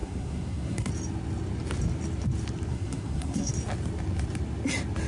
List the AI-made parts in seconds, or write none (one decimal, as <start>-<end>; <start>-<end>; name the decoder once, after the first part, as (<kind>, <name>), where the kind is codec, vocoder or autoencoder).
0.0-0.9 (codec, SNAC); 2.7-3.5